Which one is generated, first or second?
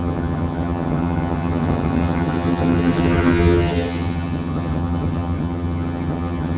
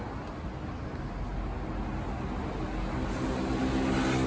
first